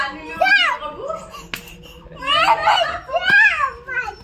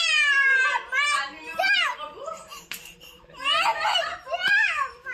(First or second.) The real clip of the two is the first